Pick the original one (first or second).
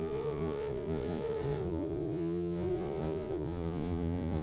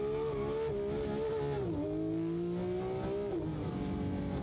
second